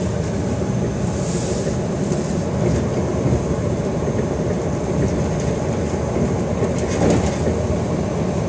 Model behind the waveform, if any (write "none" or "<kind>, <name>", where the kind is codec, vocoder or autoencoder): none